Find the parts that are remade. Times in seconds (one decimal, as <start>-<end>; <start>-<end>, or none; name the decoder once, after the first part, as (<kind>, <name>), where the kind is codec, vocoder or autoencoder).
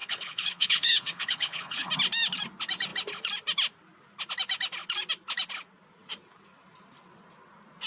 0.0-1.9 (codec, HILCodec)